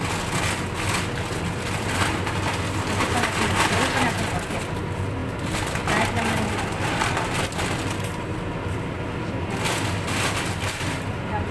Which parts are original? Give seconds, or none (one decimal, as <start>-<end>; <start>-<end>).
0.0-11.5